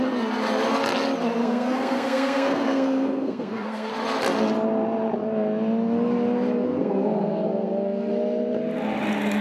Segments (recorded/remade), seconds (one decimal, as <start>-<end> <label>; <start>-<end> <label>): 0.0-1.4 recorded; 1.4-3.9 remade; 3.9-6.8 recorded; 6.8-8.1 remade; 8.1-9.4 recorded